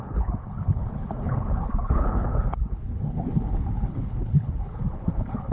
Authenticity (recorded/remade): remade